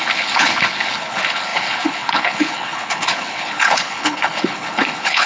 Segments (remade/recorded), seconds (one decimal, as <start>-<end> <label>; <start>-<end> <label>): 0.0-5.3 remade